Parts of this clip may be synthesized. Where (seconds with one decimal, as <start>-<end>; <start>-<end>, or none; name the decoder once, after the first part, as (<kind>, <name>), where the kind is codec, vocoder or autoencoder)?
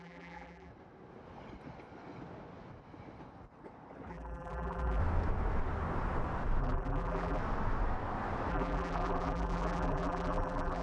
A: 0.0-0.7 (vocoder, BigVGAN v2); 4.1-5.0; 6.6-7.4; 8.5-10.8